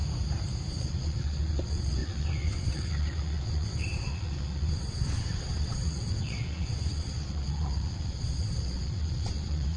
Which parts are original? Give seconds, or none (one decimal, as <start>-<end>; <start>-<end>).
0.0-0.7